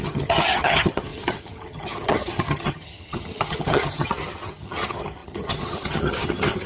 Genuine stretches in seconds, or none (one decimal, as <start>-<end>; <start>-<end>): none